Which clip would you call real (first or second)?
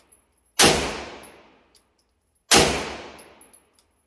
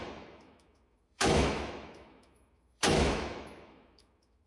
first